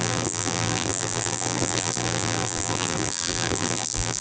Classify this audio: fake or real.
fake